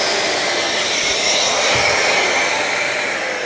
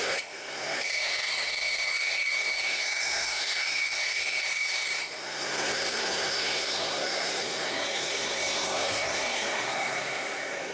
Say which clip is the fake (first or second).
second